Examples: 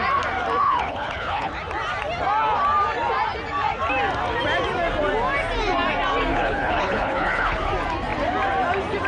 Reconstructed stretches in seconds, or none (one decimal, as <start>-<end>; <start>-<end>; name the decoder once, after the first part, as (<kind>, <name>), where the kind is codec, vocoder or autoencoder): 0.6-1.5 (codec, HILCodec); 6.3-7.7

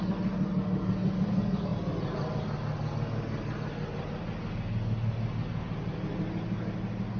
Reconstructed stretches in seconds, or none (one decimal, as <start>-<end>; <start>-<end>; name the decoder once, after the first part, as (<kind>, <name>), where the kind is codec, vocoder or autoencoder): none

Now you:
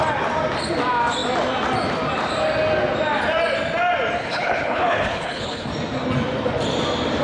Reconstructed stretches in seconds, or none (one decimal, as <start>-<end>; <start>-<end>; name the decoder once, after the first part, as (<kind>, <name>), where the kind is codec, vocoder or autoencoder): 4.2-5.7 (codec, HILCodec)